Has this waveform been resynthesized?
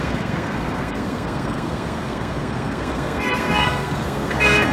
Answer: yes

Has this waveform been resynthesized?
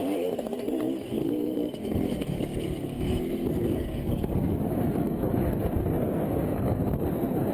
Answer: yes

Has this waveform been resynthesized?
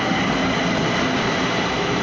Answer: no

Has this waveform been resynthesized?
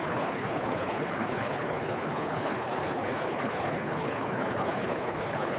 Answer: yes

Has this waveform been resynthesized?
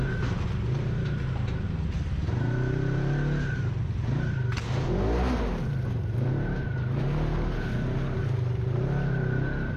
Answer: no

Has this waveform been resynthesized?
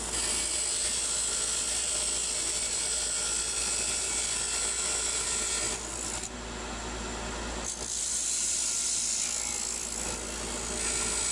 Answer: no